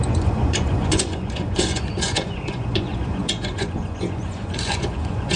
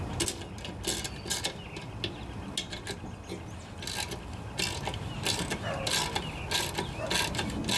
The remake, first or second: first